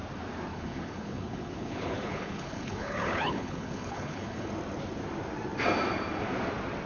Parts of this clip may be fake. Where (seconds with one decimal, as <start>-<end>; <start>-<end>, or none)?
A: 0.5-4.5